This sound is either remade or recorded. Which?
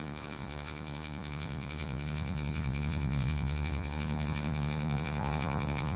remade